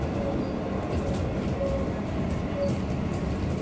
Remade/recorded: recorded